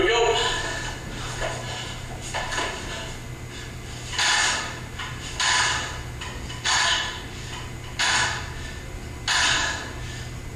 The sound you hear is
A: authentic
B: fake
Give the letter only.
A